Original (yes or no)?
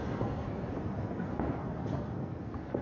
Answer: no